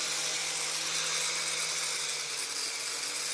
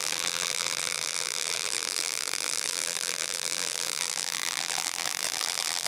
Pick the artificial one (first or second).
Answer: second